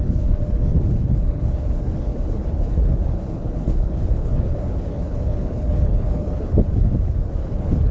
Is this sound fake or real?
fake